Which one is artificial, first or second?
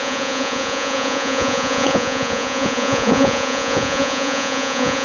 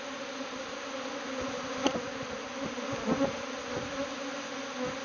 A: first